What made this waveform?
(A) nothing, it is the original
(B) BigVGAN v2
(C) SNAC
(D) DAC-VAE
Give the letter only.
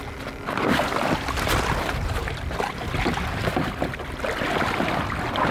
A